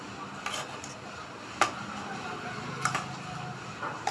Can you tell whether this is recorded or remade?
recorded